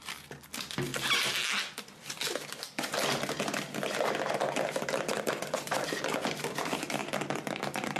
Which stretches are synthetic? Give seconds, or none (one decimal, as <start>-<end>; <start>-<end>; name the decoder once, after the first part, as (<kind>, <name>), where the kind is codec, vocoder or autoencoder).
none